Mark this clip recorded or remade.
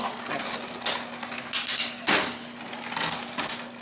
recorded